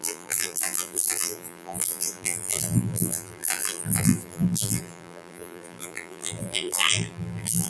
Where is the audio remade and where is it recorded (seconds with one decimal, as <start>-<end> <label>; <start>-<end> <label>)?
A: 0.0-7.7 remade